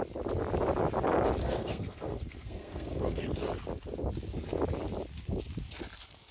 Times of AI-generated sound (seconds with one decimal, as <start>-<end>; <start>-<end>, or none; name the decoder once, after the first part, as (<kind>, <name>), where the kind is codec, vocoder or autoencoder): 1.4-3.3 (codec, SNAC)